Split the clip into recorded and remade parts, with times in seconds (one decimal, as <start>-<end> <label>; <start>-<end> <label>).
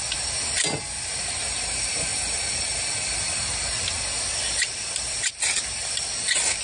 0.0-6.6 recorded